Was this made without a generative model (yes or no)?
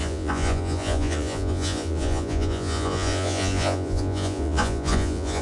no